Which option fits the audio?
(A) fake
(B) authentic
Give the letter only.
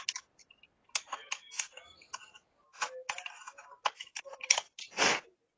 B